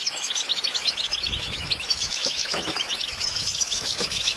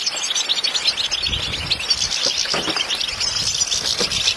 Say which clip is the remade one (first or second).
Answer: first